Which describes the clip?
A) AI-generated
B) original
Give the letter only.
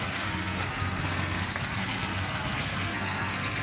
A